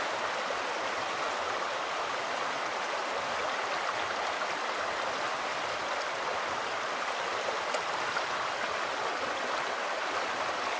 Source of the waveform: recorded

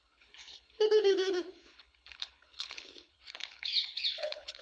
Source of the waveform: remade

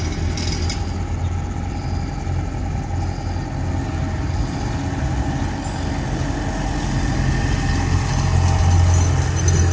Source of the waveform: recorded